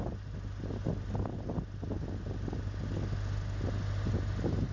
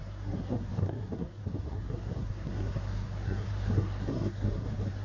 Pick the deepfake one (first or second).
second